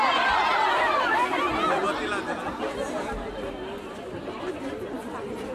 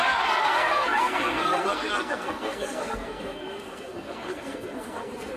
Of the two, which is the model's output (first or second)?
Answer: second